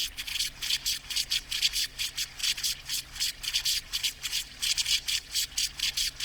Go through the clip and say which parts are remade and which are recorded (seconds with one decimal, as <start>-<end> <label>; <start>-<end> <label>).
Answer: 0.0-6.2 recorded